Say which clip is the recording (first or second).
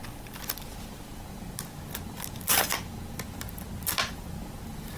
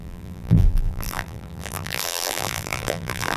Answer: first